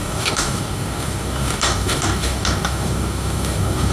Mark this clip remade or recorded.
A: remade